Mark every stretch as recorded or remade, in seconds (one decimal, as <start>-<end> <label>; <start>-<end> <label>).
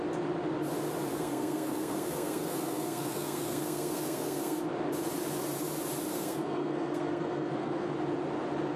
0.0-1.1 recorded; 1.1-4.6 remade; 4.6-6.1 recorded; 6.1-7.9 remade; 7.9-8.8 recorded